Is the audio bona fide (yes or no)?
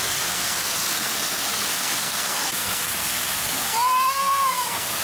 no